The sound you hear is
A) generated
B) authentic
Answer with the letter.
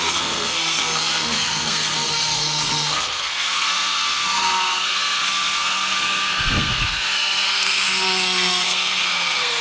A